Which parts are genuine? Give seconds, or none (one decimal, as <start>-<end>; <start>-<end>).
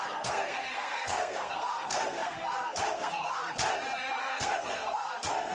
3.4-4.2